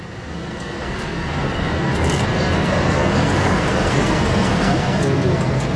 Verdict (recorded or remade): remade